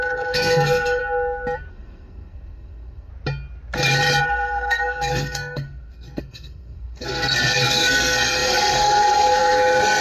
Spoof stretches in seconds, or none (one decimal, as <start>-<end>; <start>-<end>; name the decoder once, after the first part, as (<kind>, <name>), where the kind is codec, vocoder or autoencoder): 0.0-1.0 (codec, SNAC); 1.7-3.1; 4.2-10.0